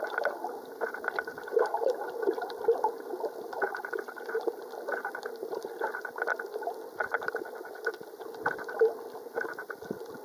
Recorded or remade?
recorded